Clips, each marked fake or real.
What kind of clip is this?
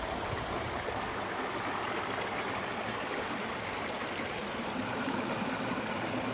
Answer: real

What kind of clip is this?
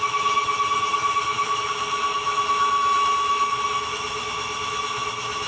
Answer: fake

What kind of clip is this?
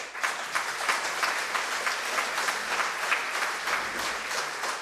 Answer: real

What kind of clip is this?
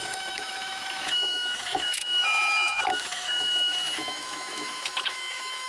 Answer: fake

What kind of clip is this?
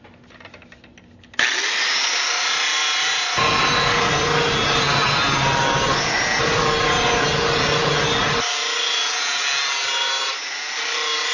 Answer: real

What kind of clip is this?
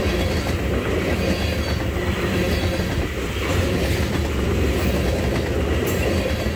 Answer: real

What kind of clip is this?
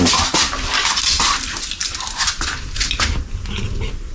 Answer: real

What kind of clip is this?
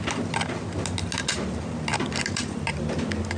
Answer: real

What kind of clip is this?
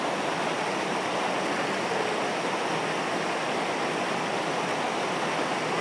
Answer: real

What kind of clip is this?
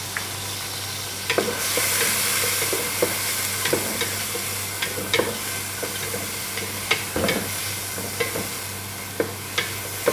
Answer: real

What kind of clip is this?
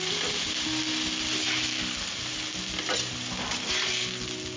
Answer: real